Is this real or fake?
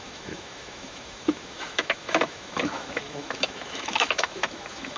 fake